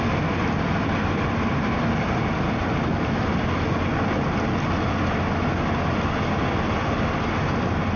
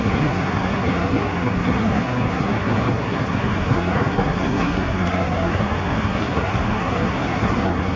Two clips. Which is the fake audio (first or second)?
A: second